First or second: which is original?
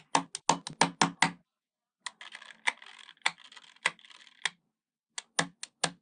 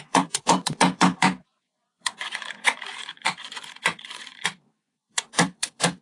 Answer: first